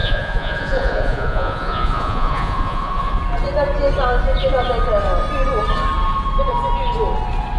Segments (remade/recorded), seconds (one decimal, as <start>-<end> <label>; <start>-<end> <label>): 0.0-3.2 remade; 3.2-7.6 recorded